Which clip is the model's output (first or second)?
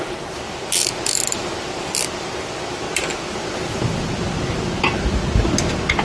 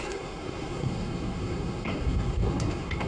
second